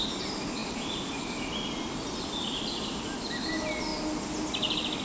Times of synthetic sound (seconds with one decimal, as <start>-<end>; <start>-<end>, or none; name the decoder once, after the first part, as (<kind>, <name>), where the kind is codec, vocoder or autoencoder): none